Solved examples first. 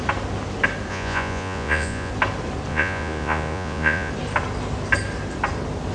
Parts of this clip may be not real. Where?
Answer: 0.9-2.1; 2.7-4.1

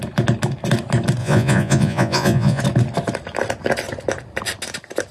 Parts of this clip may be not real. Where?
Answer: 1.2-2.6

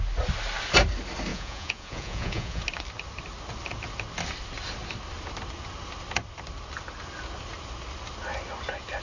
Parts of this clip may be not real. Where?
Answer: 1.3-2.6

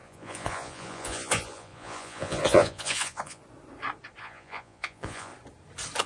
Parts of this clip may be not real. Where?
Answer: 0.0-3.4; 4.2-5.3

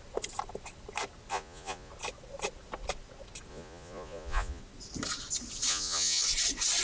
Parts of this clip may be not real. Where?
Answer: 1.3-1.9; 3.5-4.6; 5.7-6.2

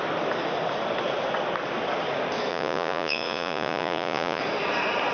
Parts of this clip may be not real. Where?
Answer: 2.5-4.4

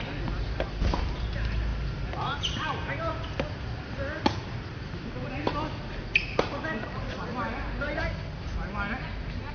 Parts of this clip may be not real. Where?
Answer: none

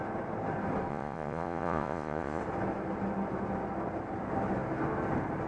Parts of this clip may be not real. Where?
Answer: 0.9-2.4